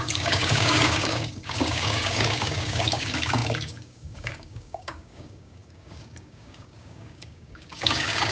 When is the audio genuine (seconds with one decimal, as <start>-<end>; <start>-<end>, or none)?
none